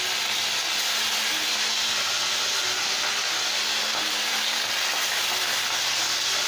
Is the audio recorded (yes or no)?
yes